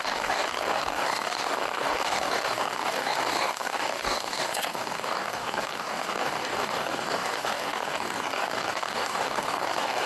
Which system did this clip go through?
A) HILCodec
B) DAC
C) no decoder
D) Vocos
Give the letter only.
B